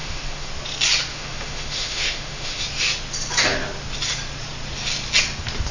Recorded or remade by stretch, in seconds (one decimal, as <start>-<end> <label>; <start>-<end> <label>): 0.0-0.5 remade; 0.5-1.1 recorded; 1.1-2.6 remade; 2.6-5.7 recorded